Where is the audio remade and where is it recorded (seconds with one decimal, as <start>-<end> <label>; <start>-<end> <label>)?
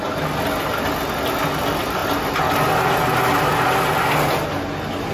0.0-5.1 recorded